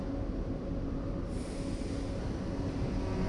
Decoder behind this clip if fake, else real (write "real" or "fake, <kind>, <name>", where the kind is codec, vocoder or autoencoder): real